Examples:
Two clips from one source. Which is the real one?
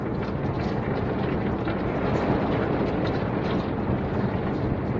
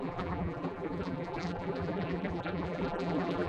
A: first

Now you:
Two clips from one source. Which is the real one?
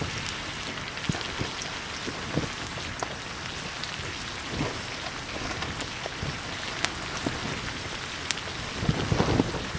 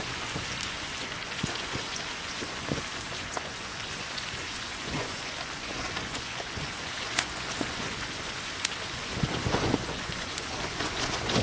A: first